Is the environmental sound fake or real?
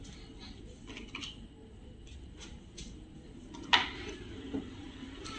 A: real